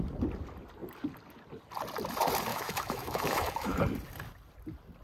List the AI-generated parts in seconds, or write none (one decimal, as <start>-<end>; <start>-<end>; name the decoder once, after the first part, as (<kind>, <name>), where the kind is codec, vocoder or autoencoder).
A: 2.5-3.8 (autoencoder, DAC-VAE)